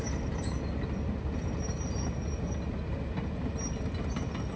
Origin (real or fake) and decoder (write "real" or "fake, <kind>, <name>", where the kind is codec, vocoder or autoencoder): real